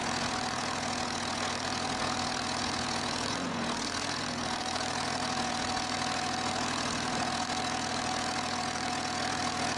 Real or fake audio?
fake